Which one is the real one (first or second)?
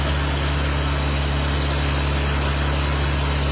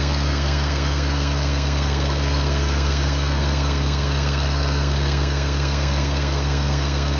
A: first